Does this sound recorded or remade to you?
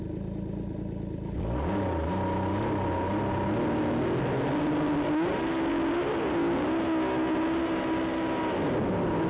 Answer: recorded